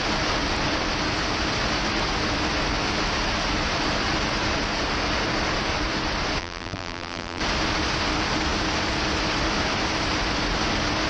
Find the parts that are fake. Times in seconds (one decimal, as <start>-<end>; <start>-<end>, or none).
6.4-7.4